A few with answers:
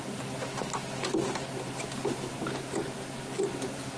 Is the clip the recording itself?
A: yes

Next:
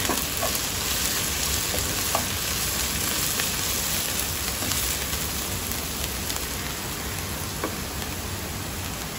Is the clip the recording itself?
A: yes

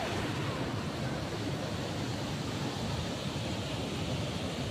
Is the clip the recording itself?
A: yes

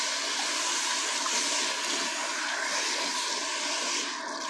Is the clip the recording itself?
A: yes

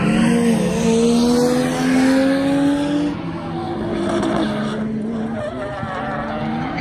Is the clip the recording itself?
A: yes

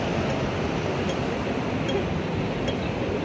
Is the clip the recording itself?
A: no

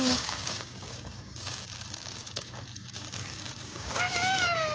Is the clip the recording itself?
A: no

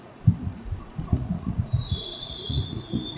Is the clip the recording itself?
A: no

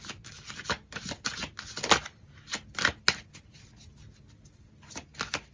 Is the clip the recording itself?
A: yes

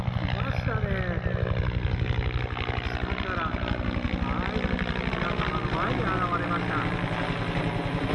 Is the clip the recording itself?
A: yes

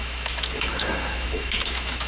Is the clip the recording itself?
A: no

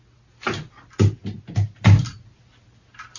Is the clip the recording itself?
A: yes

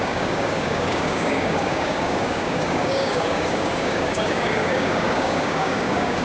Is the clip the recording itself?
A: no